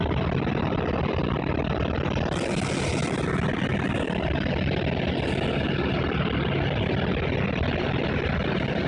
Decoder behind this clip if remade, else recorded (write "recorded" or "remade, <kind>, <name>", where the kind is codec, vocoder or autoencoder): recorded